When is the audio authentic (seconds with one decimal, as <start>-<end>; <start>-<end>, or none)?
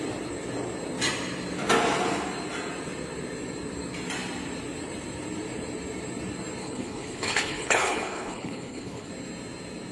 0.0-6.6; 9.1-9.9